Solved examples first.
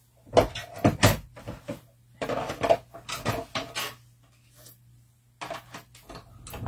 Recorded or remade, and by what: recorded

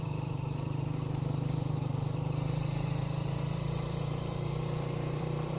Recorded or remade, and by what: remade, vocoder, BigVGAN v2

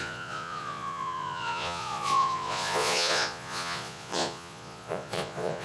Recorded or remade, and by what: remade, vocoder, Vocos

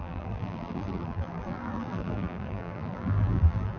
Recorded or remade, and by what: remade, vocoder, BigVGAN v2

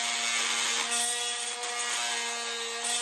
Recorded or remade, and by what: recorded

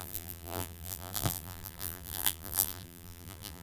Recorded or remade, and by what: remade, vocoder, BigVGAN v2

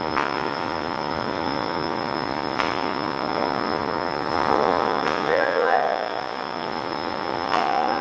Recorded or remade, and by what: remade, vocoder, Vocos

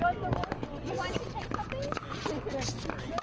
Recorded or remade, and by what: recorded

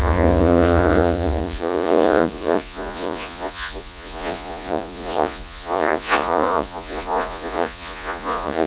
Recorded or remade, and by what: remade, vocoder, Vocos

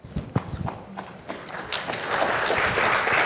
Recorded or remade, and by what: recorded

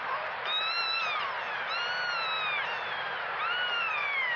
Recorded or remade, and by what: recorded